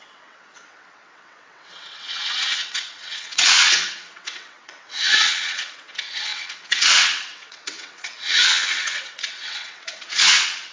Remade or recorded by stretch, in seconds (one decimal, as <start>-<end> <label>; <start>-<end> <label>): 0.0-10.7 remade